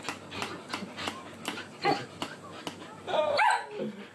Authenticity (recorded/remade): recorded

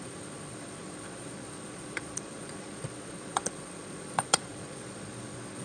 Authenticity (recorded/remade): remade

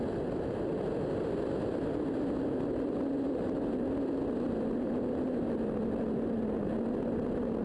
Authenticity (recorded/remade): recorded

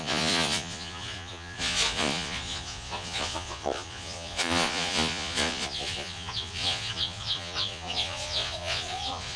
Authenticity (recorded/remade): remade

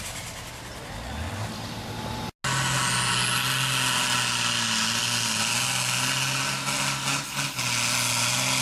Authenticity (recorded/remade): recorded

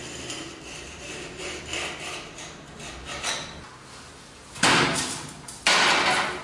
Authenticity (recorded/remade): recorded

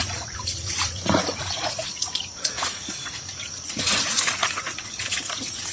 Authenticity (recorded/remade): remade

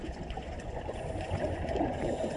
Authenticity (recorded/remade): remade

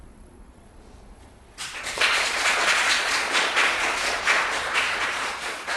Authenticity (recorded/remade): remade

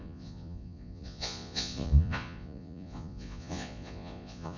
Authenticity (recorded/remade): remade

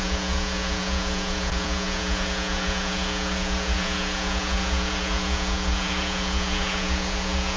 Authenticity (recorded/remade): remade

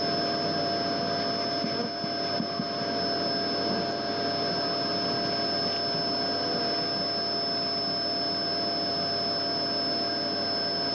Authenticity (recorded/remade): recorded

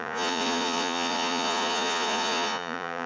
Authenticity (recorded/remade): remade